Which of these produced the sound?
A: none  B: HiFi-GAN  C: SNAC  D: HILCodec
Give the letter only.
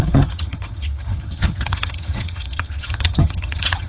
B